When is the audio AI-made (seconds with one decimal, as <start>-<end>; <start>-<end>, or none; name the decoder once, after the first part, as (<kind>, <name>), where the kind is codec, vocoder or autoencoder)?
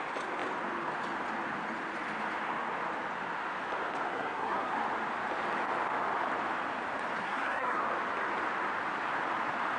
4.1-4.7 (codec, SNAC); 7.2-7.8